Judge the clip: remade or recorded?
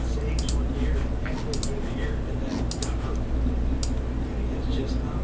recorded